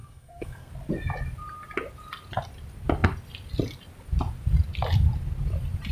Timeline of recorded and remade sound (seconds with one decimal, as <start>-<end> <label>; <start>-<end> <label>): 0.0-0.7 remade; 0.7-5.9 recorded